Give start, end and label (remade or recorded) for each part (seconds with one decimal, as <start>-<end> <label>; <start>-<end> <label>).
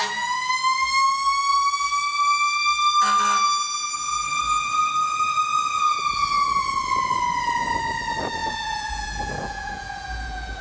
0.0-0.5 remade; 0.5-8.4 recorded; 8.4-10.6 remade